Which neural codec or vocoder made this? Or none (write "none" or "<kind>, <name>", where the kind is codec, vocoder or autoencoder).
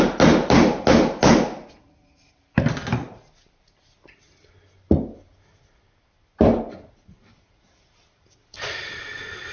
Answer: none